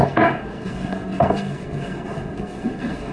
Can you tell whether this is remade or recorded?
remade